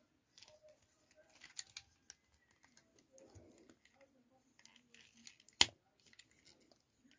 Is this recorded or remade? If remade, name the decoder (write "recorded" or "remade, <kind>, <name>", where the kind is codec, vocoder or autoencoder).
recorded